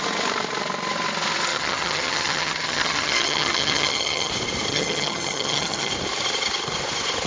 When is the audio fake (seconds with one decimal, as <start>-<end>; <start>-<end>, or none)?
1.5-4.3; 4.7-5.9